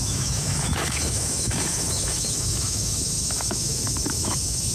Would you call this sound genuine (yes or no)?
no